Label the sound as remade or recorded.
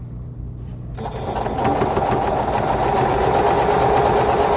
recorded